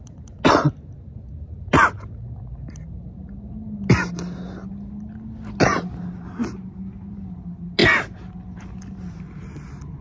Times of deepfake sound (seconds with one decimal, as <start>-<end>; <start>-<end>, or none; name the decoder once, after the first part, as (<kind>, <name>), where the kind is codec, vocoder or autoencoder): none